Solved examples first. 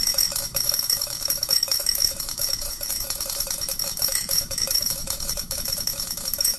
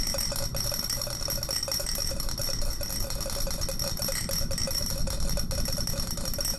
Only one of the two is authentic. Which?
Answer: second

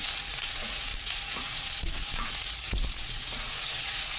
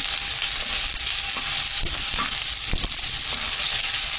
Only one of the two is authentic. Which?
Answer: second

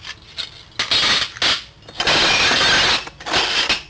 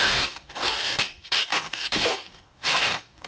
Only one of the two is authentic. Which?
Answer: first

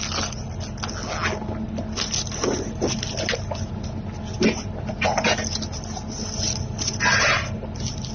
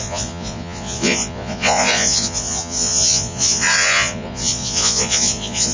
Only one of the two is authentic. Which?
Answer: first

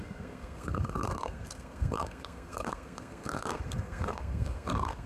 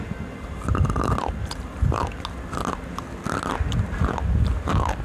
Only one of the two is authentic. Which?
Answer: second